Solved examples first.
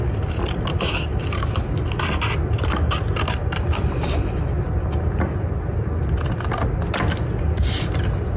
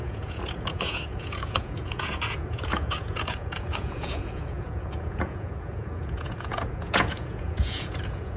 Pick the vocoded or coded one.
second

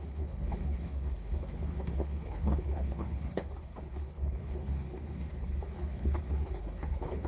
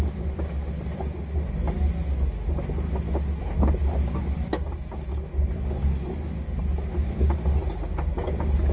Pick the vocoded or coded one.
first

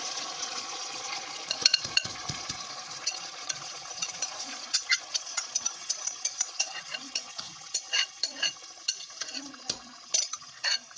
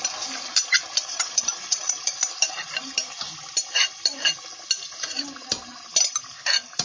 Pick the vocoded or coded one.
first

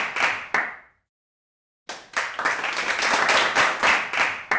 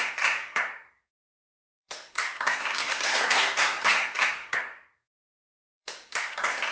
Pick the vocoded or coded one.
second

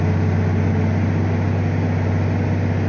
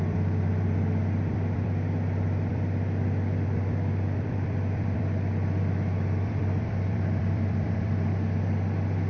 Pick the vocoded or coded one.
second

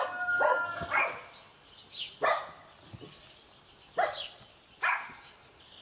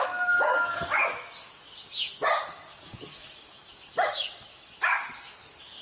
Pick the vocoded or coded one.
second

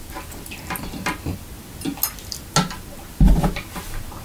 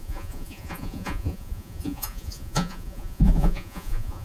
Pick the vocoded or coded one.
second